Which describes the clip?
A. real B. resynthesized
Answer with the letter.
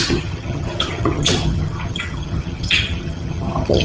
B